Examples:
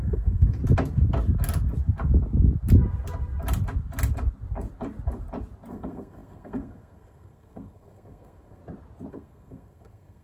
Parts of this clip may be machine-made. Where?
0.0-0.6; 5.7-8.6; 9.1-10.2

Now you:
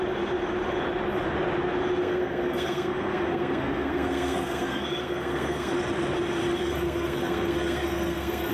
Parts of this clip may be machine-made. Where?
2.0-5.7; 6.6-8.5

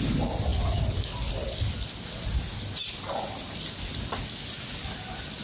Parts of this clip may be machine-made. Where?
none

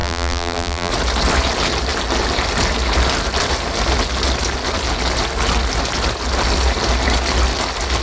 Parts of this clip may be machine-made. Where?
0.0-0.9